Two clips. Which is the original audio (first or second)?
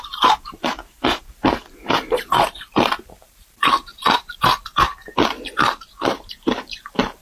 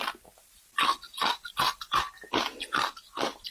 second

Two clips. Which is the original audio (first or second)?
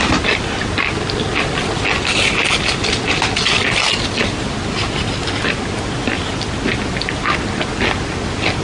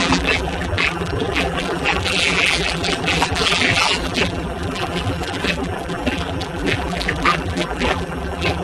first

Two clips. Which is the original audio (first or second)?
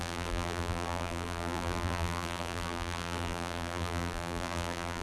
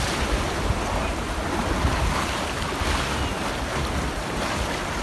second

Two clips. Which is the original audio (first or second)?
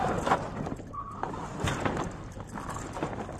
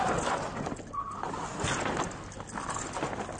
second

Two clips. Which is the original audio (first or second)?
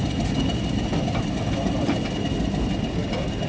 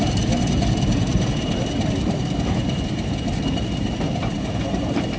first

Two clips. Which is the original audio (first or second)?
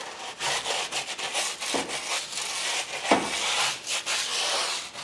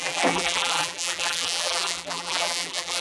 first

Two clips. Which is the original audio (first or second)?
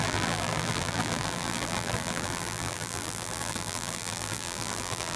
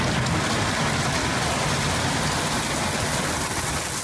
second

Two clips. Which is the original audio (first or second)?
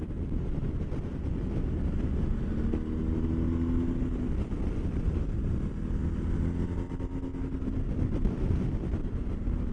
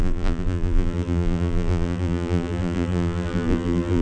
first